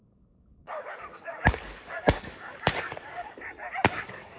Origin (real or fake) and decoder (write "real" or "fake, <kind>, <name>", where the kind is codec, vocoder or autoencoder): fake, codec, DAC